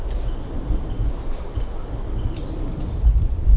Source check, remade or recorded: recorded